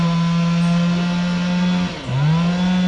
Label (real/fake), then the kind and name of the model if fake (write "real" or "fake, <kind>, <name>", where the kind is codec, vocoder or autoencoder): real